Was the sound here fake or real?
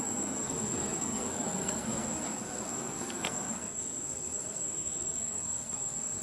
fake